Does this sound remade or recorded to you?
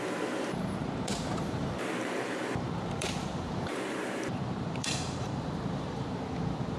remade